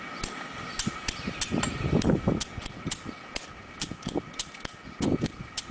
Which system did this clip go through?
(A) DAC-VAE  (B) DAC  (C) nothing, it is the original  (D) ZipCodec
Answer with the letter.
C